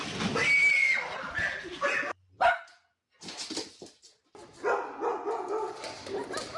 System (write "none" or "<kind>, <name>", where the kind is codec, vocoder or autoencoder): none